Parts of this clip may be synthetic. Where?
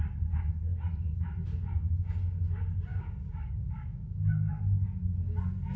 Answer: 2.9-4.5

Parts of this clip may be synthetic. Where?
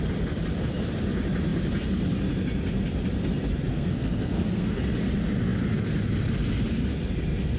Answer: 3.7-4.8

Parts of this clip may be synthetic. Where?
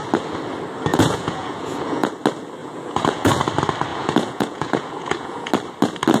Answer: 0.9-2.1; 2.6-3.4; 3.9-5.5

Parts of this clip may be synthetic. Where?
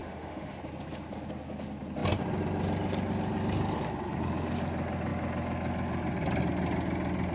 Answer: 0.0-0.6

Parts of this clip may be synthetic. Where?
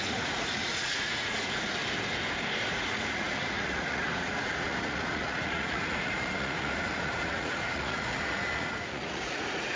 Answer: 0.0-1.8; 2.7-9.8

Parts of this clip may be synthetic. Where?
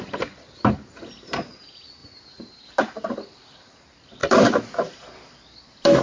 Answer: none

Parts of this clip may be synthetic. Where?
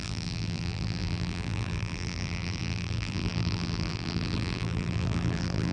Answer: 0.0-5.7